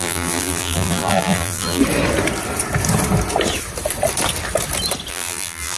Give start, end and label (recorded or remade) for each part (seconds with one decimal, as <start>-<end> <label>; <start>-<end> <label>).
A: 0.0-1.8 remade; 1.8-5.1 recorded; 5.1-5.8 remade